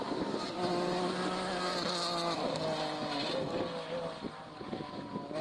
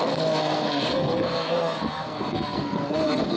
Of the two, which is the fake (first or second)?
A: second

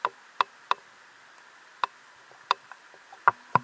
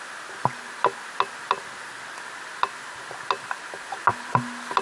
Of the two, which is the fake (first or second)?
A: first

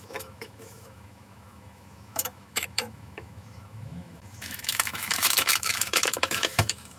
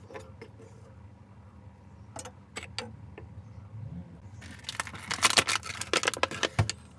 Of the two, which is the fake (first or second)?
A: first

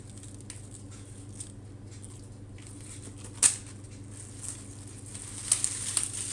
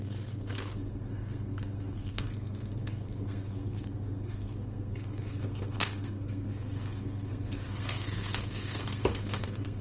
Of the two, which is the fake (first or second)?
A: second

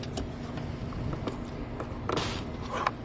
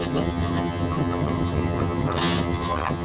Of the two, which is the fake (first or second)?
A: second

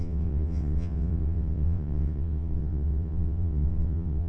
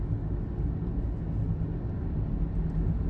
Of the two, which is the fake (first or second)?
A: first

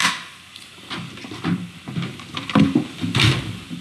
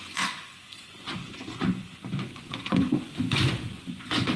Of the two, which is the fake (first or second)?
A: second